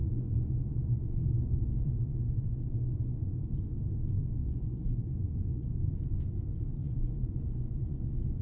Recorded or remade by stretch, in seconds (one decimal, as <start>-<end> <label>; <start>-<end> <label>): 0.0-3.6 remade; 3.6-4.4 recorded; 4.4-5.7 remade; 5.7-6.8 recorded; 6.8-8.4 remade